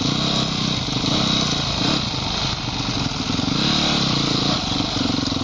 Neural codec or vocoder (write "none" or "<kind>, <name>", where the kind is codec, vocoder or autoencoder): none